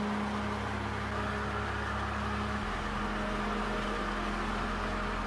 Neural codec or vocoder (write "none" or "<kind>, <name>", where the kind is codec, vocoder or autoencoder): none